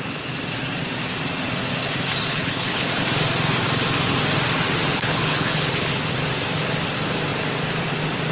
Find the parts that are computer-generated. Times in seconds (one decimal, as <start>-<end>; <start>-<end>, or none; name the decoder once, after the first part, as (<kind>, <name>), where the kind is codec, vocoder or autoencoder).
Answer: 2.3-3.0 (codec, HILCodec); 4.8-6.0